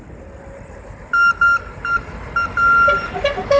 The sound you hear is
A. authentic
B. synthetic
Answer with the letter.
A